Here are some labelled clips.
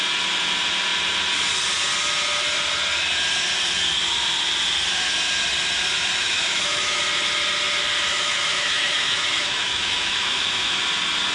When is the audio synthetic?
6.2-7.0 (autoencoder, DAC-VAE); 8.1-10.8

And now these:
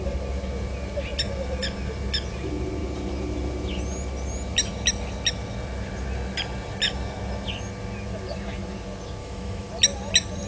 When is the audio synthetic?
9.2-9.7 (autoencoder, DAC-VAE)

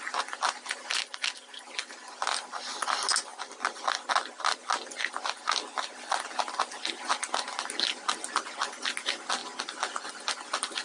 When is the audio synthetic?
none

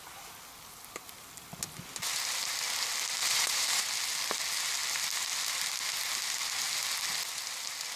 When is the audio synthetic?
3.2-3.8 (vocoder, BigVGAN v2)